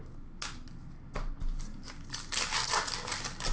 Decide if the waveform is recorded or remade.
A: recorded